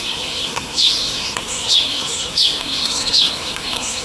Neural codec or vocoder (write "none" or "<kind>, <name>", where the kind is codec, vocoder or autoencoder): codec, SNAC